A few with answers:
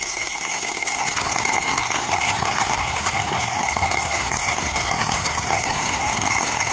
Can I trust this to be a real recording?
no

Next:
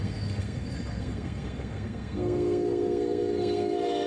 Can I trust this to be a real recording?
no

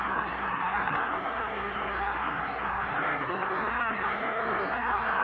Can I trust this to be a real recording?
no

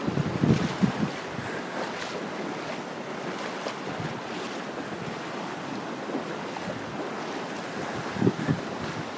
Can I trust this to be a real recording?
yes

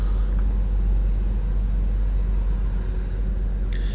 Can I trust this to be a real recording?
yes